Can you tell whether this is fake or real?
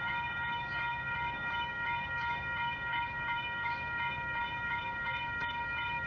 fake